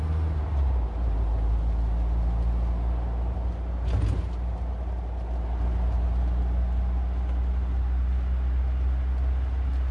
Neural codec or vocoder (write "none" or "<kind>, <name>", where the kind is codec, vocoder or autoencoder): none